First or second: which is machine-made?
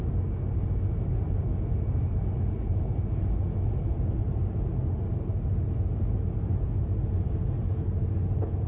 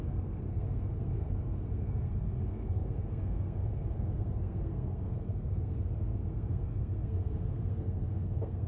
second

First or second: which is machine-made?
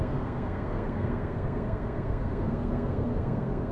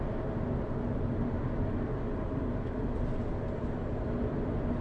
first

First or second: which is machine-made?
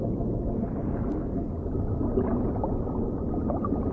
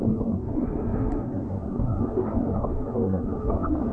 second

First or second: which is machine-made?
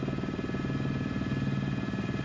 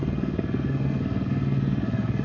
second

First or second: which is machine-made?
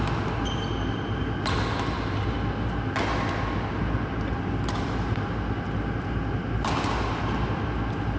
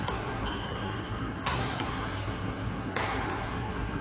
second